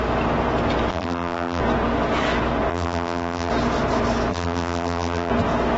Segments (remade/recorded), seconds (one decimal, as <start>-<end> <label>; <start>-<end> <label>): 0.0-0.9 recorded; 0.9-1.6 remade; 1.6-2.7 recorded; 2.7-3.5 remade; 3.5-4.3 recorded; 4.3-5.3 remade; 5.3-5.8 recorded